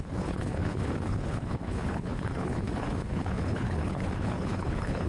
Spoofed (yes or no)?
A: yes